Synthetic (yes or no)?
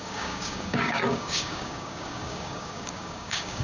yes